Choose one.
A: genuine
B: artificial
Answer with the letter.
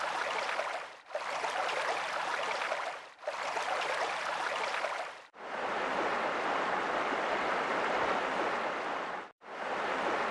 A